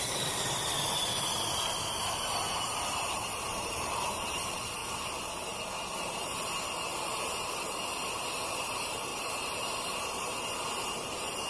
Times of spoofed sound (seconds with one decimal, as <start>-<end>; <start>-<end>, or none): 0.0-4.8; 8.5-9.1